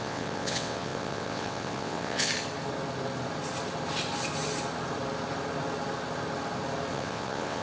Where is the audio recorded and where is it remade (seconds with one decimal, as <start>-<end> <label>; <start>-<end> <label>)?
0.0-2.3 remade; 2.3-6.9 recorded; 6.9-7.6 remade